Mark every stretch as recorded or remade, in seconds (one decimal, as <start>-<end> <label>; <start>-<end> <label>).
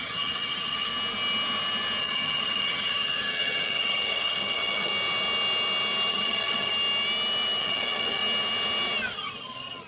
0.0-0.9 remade; 0.9-2.0 recorded; 2.0-4.9 remade; 4.9-6.1 recorded; 6.1-6.7 remade; 6.7-7.6 recorded; 7.6-8.2 remade; 8.2-9.1 recorded; 9.1-9.9 remade